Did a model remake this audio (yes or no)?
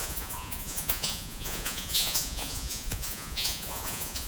yes